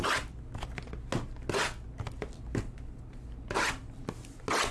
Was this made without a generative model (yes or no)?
yes